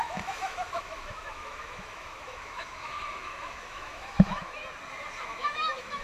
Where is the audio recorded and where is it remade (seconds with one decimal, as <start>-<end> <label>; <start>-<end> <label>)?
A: 0.0-4.6 remade; 4.6-5.2 recorded; 5.2-6.0 remade